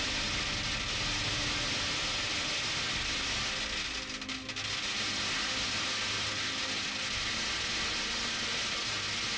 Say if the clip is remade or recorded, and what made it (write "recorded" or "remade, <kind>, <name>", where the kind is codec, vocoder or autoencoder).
recorded